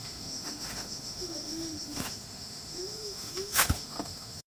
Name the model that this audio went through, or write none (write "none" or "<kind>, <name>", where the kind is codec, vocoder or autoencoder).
autoencoder, DAC-VAE